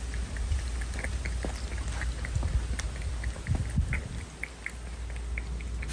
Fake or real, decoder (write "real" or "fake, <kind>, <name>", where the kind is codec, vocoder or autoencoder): real